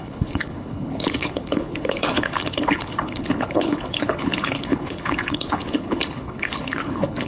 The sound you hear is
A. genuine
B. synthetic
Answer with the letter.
B